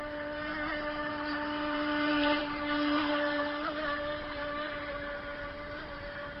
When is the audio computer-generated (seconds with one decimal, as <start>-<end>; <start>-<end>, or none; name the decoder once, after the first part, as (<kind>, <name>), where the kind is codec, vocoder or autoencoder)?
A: 0.0-0.5 (vocoder, BigVGAN v2); 1.1-2.4; 3.1-6.4